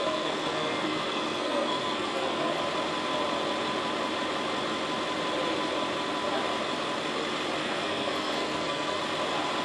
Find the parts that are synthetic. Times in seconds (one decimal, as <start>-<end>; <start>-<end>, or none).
0.0-2.6; 7.6-9.0